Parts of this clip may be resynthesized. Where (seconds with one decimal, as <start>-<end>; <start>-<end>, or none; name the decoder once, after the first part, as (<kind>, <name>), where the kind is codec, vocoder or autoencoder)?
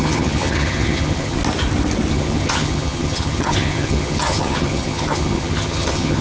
0.0-1.4 (vocoder, HiFi-GAN); 2.1-6.2